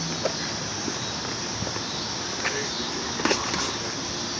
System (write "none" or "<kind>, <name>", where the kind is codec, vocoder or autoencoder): none